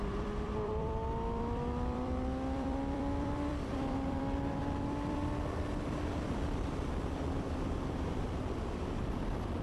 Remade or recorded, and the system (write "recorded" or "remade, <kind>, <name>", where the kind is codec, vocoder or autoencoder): remade, vocoder, BigVGAN v2